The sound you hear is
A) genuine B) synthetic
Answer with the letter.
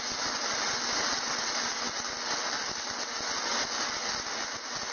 A